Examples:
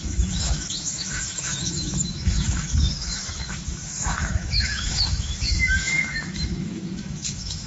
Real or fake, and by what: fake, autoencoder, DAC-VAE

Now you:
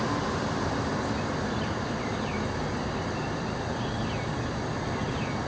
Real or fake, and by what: fake, vocoder, BigVGAN v2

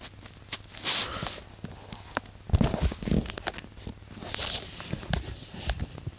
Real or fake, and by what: real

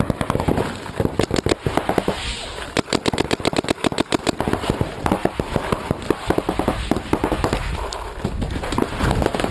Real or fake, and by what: real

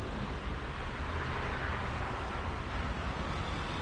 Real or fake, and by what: real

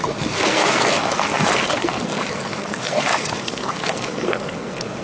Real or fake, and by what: fake, codec, SNAC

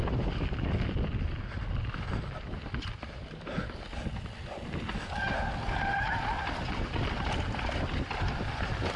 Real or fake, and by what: real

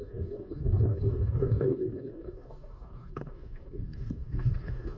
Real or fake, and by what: fake, codec, DAC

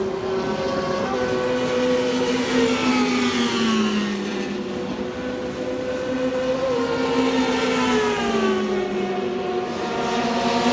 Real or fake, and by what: real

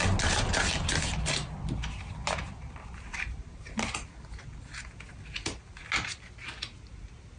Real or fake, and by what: real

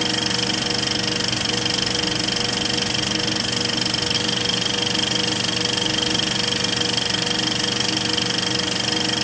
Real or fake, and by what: real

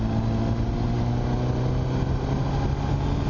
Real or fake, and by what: real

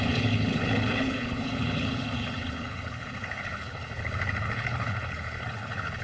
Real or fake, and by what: fake, codec, HILCodec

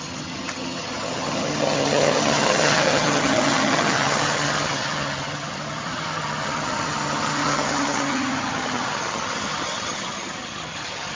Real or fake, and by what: fake, vocoder, HiFi-GAN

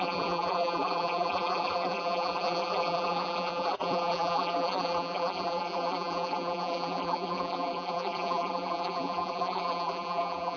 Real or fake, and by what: fake, vocoder, BigVGAN v2